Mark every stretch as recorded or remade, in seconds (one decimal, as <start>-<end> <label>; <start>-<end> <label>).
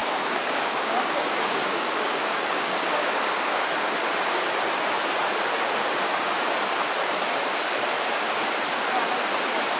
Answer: 0.0-3.7 remade; 3.7-5.8 recorded; 5.8-6.6 remade; 6.6-9.8 recorded